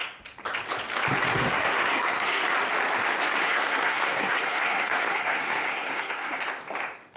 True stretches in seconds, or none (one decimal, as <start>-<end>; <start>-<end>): 0.0-1.3; 2.4-3.3; 6.4-7.2

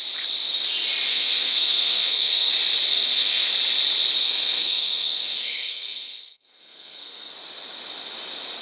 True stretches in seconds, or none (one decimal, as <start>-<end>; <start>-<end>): 0.0-1.1; 2.5-2.9; 3.5-4.2; 7.3-8.6

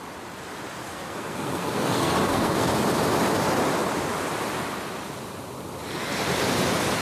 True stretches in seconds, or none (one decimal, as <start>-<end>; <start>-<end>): 0.0-0.8; 2.7-7.0

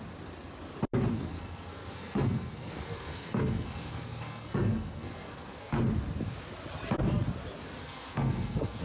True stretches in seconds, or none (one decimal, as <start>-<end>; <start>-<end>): 0.0-1.1; 5.8-7.8

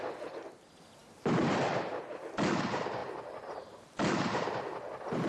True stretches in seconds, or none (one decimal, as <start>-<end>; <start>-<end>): 0.0-5.3